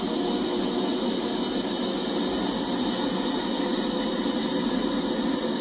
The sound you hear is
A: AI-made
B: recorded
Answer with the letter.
B